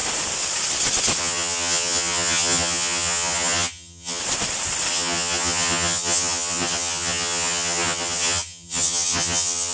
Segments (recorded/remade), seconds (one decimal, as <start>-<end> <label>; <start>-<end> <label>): 0.0-1.2 recorded; 1.2-4.2 remade; 4.2-4.9 recorded; 4.9-9.7 remade

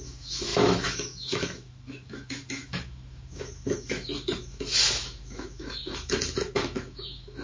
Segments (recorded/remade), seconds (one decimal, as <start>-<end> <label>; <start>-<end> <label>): 0.0-7.4 remade

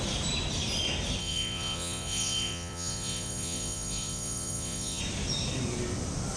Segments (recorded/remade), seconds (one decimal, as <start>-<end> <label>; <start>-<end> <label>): 0.0-1.2 recorded; 1.2-5.0 remade; 5.0-6.4 recorded

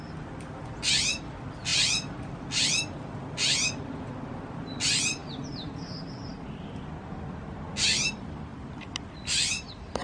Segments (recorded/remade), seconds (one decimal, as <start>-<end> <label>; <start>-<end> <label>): 0.0-10.0 recorded

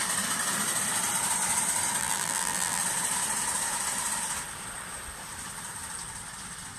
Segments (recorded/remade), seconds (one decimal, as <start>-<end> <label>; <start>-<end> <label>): 0.0-2.0 recorded; 2.0-2.8 remade; 2.8-6.8 recorded

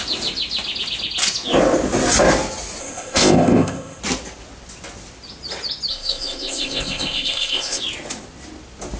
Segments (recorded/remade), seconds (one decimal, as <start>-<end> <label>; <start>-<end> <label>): 0.0-2.8 recorded; 2.8-4.0 remade; 4.0-5.9 recorded; 5.9-7.8 remade; 7.8-9.0 recorded

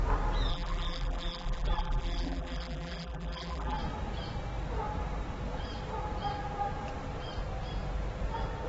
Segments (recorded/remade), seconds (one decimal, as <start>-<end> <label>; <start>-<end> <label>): 0.0-0.5 recorded; 0.5-3.8 remade; 3.8-8.7 recorded

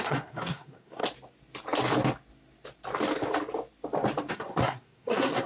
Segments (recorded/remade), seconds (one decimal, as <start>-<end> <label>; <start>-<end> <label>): 0.0-1.0 remade; 1.0-4.3 recorded; 4.3-5.5 remade